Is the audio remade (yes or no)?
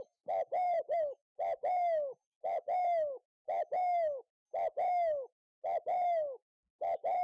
yes